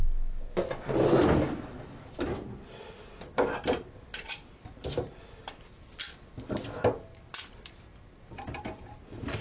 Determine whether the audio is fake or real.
real